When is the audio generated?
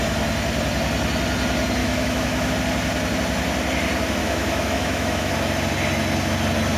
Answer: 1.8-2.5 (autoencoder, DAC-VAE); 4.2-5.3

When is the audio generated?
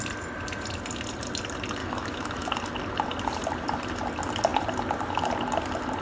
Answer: 1.8-2.5 (autoencoder, DAC-VAE)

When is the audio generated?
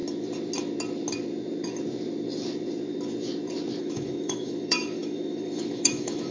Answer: 3.8-6.3 (autoencoder, DAC-VAE)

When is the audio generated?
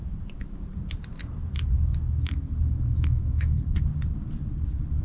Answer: 2.9-3.6 (autoencoder, DAC-VAE)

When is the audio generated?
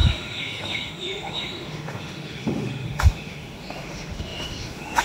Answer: 0.0-5.0 (autoencoder, DAC-VAE)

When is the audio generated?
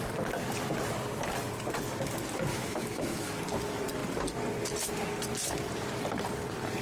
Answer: 2.5-3.3 (autoencoder, DAC-VAE)